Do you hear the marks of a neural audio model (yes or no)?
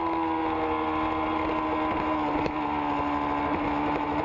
no